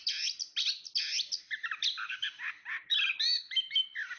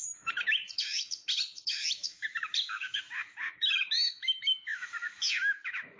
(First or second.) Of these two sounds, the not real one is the second